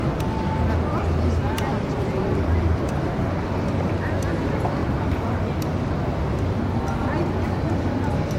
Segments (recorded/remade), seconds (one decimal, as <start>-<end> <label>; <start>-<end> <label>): 0.0-1.7 recorded; 1.7-3.2 remade; 3.2-8.4 recorded